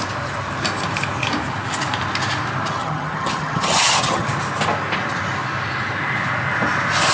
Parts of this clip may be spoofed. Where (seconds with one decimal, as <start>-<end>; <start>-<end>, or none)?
2.8-4.3